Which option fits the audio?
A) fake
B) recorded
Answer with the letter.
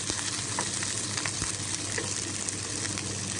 B